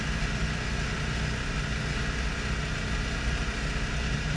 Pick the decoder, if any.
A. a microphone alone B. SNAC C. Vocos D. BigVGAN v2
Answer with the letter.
A